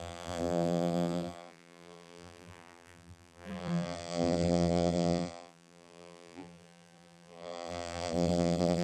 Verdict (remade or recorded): remade